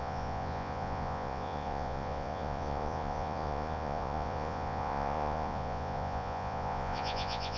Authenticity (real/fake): fake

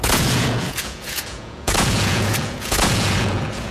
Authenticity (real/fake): fake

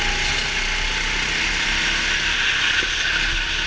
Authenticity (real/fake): real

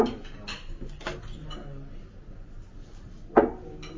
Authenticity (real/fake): real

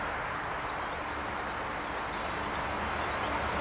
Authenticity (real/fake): real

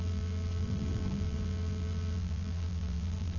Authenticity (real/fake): fake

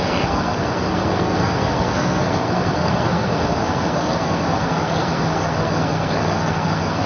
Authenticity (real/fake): fake